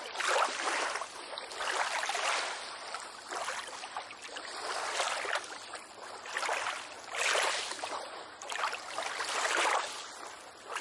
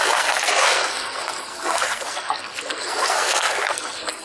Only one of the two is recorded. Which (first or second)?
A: first